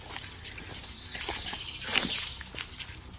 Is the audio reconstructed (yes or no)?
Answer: no